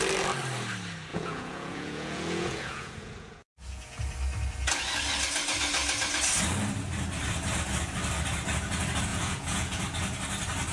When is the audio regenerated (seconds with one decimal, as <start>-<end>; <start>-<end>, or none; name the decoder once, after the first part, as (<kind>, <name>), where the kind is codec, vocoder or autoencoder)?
1.1-4.0 (vocoder, Vocos); 9.1-9.8